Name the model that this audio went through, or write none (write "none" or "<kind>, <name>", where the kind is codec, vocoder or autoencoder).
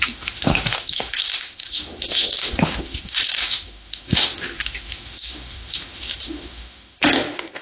autoencoder, DAC-VAE